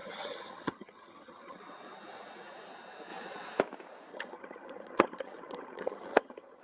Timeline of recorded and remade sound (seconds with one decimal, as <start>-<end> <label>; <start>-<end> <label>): 0.0-1.6 remade; 1.6-4.1 recorded; 4.1-6.6 remade